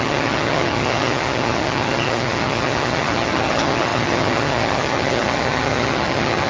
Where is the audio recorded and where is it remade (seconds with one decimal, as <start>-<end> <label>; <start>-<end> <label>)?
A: 0.0-6.5 remade